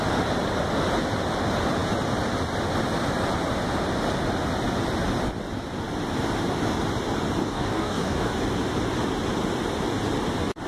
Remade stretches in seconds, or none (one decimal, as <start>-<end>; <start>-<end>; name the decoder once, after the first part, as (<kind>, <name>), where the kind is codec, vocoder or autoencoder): 7.4-8.3 (codec, DAC)